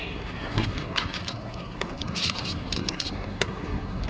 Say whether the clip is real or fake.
fake